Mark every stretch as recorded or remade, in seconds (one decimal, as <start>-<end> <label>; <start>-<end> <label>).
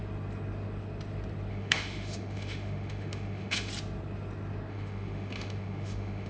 0.0-1.5 recorded; 1.5-3.7 remade; 3.7-4.7 recorded; 4.7-6.3 remade